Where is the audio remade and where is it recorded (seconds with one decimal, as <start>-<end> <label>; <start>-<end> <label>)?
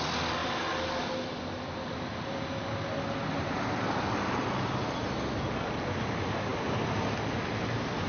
0.0-8.1 recorded